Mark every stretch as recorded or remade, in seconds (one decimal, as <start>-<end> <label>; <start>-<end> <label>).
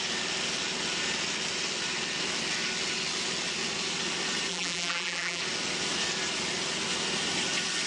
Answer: 0.0-4.5 recorded; 4.5-5.4 remade; 5.4-7.9 recorded